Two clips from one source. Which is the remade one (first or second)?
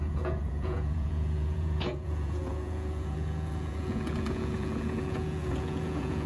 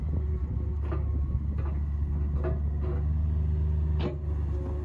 first